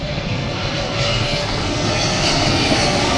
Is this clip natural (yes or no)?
no